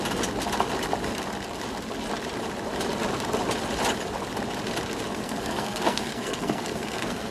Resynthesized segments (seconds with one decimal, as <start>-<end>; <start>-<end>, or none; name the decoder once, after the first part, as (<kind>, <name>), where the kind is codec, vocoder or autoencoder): 5.1-7.3 (codec, SNAC)